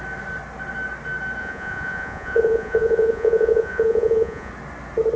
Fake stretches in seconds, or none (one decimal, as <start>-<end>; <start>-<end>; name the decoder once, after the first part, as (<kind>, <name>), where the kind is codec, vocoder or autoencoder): 1.4-4.5 (vocoder, Vocos)